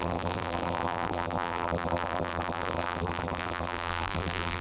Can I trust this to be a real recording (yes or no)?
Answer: no